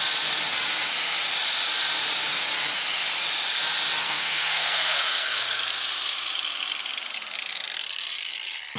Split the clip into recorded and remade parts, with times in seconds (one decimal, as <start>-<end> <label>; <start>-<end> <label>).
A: 0.0-4.0 recorded; 4.0-5.6 remade; 5.6-8.8 recorded